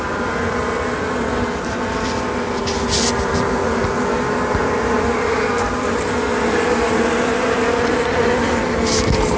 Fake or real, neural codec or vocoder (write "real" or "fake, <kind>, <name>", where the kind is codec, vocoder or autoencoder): real